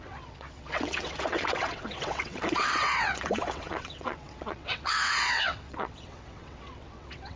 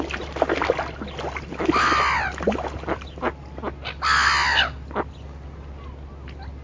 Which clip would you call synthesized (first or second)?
first